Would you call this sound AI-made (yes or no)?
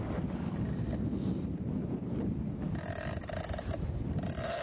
no